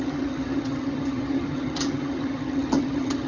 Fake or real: fake